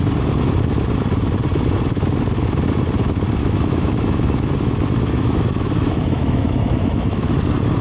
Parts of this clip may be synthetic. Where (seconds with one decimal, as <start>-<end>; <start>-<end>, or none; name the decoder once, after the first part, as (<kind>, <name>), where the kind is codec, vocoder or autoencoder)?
3.4-7.3 (autoencoder, DAC-VAE)